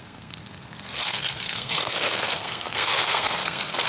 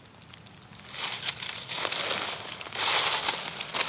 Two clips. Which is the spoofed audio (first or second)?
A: first